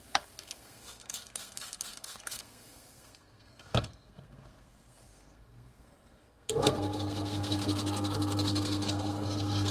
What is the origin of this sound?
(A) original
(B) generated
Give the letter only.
B